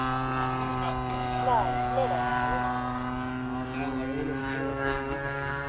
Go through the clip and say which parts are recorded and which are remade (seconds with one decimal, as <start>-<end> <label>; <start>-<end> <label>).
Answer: 0.0-4.4 recorded; 4.4-5.7 remade